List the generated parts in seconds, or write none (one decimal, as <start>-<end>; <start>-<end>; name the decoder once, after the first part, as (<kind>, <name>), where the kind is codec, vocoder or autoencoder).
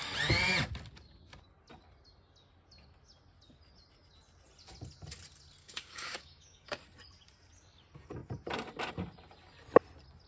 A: 5.6-6.8 (codec, DAC)